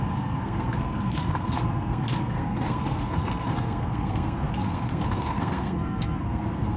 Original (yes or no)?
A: no